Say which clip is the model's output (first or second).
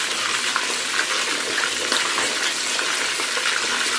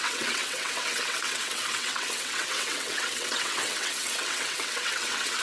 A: second